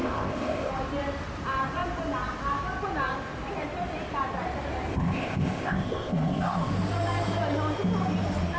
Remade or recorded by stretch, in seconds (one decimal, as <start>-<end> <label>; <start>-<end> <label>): 0.0-0.7 remade; 0.7-4.9 recorded; 4.9-6.7 remade; 6.7-8.6 recorded